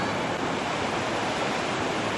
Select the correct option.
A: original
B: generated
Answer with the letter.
A